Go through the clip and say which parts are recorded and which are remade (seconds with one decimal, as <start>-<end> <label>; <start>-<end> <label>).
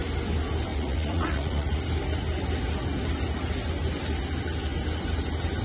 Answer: 0.0-0.7 recorded; 0.7-1.8 remade; 1.8-5.6 recorded